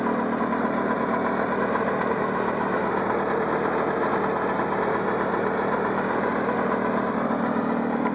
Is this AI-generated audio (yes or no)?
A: no